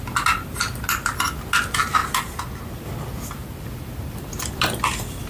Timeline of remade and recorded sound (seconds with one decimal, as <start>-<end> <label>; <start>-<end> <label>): 0.0-5.3 recorded